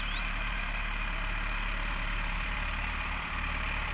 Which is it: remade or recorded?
remade